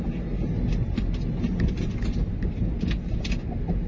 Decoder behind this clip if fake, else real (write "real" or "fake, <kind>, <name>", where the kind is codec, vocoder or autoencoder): real